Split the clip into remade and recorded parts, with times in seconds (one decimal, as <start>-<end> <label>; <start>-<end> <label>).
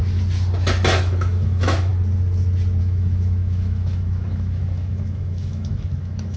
0.0-1.0 recorded; 1.0-1.9 remade; 1.9-2.8 recorded; 2.8-6.4 remade